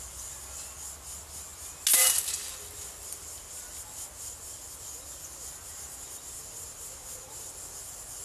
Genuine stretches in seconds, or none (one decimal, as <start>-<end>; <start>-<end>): 0.0-8.2